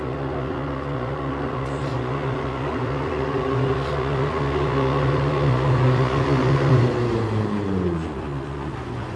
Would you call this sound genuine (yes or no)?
no